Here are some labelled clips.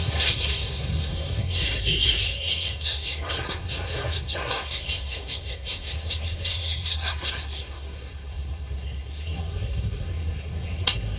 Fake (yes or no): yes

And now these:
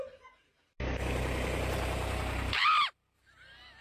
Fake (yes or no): no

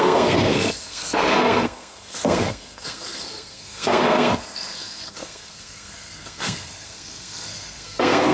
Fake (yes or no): yes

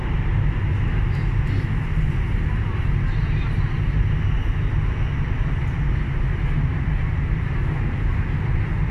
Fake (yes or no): no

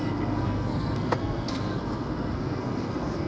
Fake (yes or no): yes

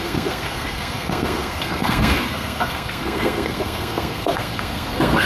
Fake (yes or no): yes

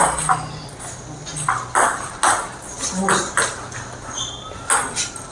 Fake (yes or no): no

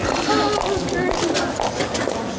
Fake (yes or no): no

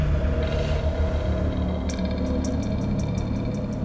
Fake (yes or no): no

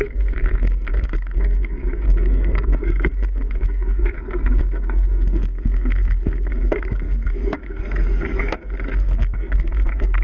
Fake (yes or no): yes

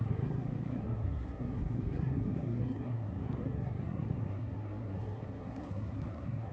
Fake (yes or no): yes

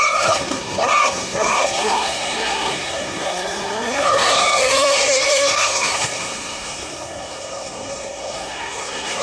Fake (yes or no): yes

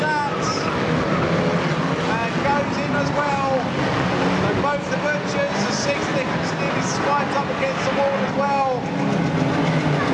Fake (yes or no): no